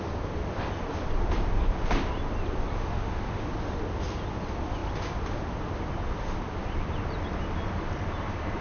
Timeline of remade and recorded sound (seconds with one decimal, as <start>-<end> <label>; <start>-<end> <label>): 0.0-2.8 recorded; 2.8-3.4 remade; 3.4-8.6 recorded